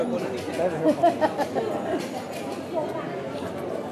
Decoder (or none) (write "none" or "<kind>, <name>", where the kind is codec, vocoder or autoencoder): none